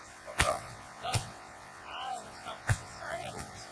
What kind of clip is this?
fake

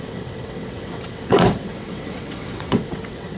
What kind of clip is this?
fake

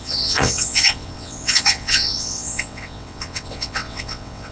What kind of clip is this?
fake